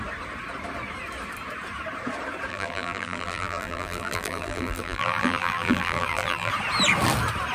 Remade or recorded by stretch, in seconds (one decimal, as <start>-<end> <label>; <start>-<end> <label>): 0.0-2.5 recorded; 2.5-6.5 remade; 6.5-7.5 recorded

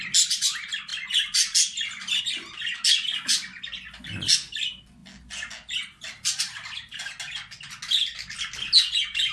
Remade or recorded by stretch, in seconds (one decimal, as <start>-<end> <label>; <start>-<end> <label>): 0.0-9.3 recorded

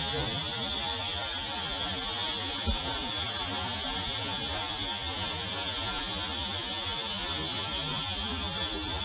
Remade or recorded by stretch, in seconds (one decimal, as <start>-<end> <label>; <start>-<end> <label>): 0.0-2.4 recorded; 2.4-4.6 remade; 4.6-5.1 recorded; 5.1-6.0 remade; 6.0-9.0 recorded